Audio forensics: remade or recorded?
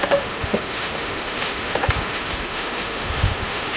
remade